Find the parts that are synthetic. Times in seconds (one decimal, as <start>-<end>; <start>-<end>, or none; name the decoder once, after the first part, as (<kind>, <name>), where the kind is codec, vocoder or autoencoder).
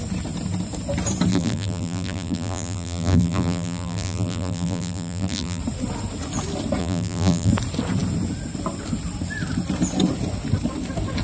1.3-5.6 (vocoder, BigVGAN v2); 6.8-7.5